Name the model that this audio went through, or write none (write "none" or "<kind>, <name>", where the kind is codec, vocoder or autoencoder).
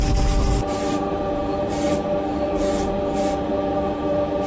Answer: vocoder, BigVGAN v2